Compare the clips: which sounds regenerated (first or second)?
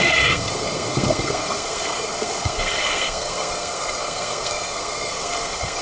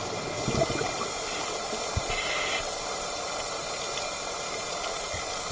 first